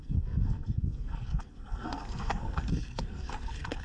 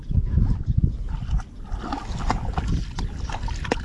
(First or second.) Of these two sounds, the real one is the second